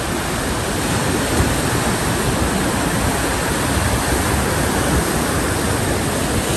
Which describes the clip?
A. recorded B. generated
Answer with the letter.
A